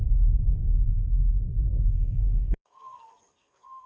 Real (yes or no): no